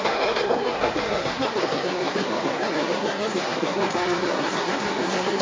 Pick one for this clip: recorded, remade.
remade